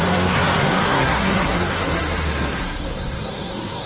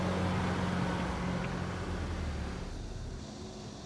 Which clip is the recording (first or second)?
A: second